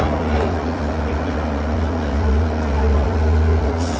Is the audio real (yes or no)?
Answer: no